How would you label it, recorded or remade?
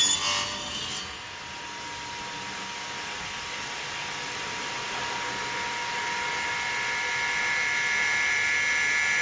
recorded